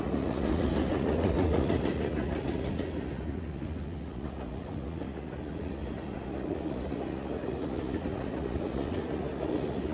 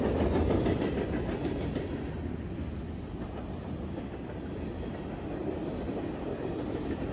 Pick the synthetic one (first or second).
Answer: first